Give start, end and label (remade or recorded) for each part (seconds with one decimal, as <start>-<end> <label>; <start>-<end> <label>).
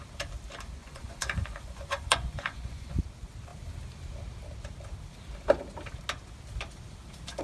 0.0-0.8 recorded; 0.8-3.0 remade; 3.0-7.4 recorded